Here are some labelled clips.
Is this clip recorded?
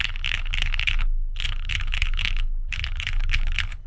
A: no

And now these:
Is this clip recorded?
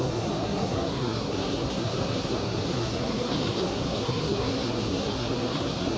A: no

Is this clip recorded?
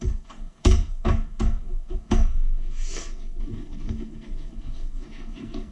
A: no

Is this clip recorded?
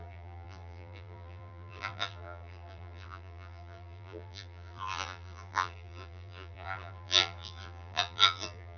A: no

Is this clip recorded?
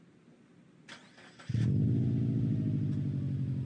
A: yes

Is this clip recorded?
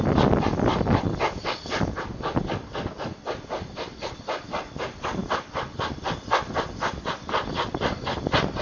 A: yes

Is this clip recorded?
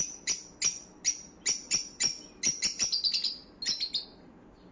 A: yes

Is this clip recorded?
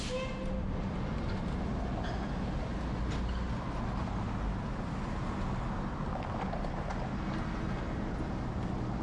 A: yes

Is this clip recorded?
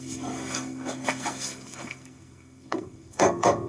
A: no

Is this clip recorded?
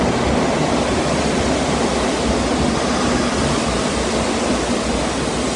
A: yes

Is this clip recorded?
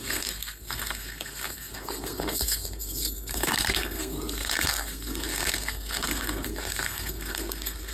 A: no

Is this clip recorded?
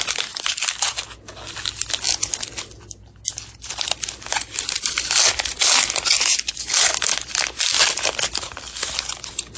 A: yes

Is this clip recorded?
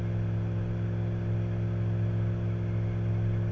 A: yes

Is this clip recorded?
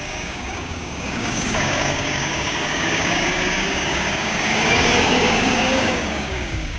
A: no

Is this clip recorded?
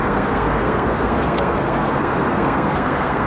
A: no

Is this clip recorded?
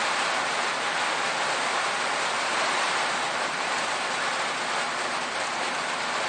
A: yes